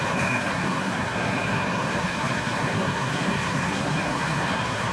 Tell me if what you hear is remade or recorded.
remade